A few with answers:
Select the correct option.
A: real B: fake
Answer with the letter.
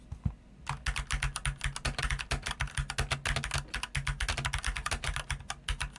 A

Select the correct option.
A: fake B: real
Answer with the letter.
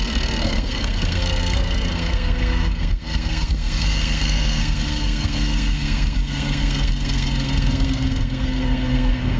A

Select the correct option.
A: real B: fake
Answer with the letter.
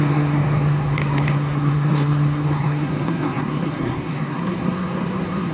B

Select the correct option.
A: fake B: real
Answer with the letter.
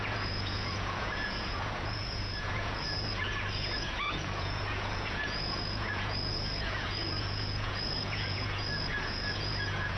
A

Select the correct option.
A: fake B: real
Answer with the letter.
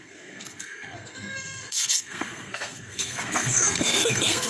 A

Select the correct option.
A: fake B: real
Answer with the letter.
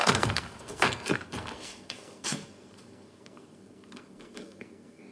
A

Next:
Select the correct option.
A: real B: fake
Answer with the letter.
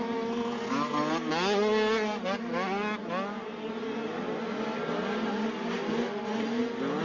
A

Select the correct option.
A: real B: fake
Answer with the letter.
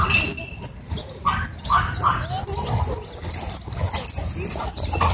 A